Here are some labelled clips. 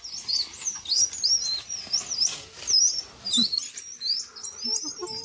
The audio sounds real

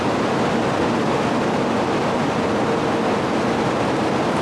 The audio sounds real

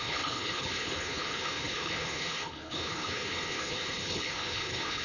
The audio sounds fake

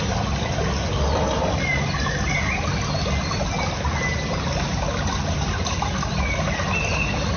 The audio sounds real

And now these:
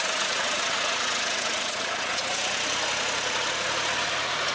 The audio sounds fake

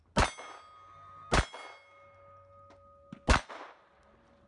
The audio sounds real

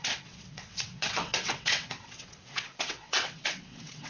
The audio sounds fake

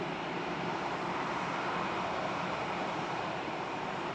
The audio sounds fake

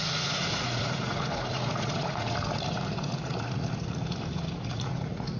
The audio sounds fake